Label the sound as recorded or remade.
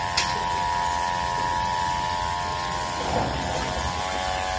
recorded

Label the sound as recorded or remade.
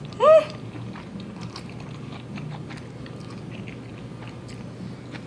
recorded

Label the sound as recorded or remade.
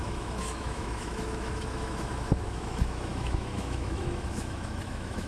remade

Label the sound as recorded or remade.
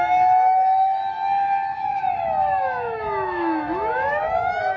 remade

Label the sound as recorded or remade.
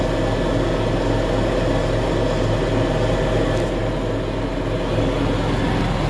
recorded